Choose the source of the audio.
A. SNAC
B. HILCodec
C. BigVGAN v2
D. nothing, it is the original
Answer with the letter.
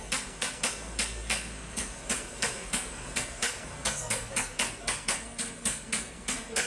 A